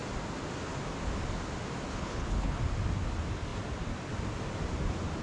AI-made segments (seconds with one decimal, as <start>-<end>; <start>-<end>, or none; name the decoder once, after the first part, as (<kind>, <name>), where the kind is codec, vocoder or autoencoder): 1.9-2.6 (codec, HILCodec)